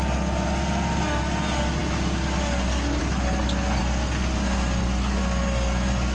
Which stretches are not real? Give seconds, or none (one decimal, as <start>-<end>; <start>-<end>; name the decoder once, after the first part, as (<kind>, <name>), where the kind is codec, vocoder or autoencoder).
none